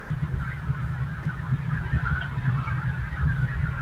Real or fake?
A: fake